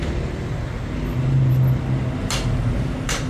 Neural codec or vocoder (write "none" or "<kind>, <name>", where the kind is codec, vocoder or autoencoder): none